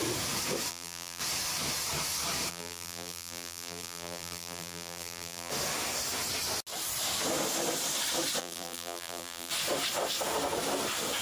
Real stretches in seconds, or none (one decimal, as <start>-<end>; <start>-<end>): 0.0-0.7; 1.2-2.5; 5.5-8.4; 9.5-11.2